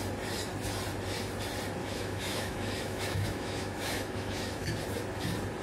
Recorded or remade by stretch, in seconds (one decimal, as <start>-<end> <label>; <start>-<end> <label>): 0.0-1.8 recorded; 1.8-4.7 remade; 4.7-5.6 recorded